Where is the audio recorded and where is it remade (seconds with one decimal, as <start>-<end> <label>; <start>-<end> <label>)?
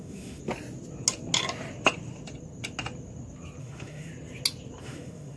0.0-0.4 remade; 0.4-3.6 recorded; 3.6-4.1 remade; 4.1-4.8 recorded; 4.8-5.4 remade